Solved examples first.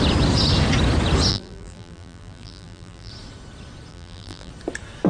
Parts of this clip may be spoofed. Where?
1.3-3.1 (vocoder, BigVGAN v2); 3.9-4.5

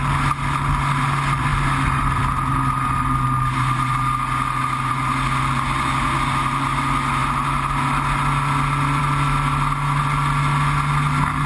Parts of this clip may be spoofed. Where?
none